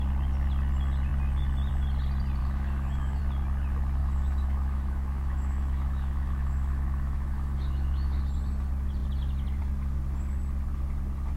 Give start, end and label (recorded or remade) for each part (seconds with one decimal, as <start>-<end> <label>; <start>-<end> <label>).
0.0-2.4 recorded; 2.4-3.2 remade; 3.2-4.0 recorded; 4.0-8.2 remade; 8.2-11.4 recorded